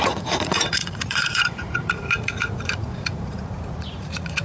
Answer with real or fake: fake